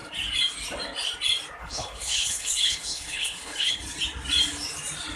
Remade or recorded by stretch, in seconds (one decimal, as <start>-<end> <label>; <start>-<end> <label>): 0.0-1.6 recorded; 1.6-3.8 remade; 3.8-5.2 recorded

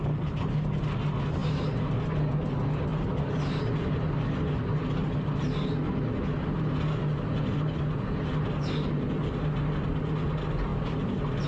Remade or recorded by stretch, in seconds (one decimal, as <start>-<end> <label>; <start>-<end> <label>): 0.0-10.7 recorded; 10.7-11.5 remade

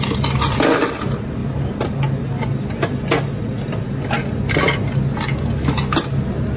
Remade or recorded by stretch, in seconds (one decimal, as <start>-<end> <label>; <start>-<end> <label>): 0.0-6.6 recorded